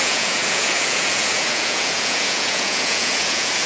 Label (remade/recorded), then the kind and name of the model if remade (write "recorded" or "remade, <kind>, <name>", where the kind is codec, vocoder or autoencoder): remade, vocoder, Vocos